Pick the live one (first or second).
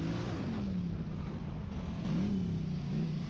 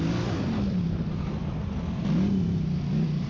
first